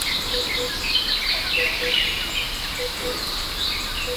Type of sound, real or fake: real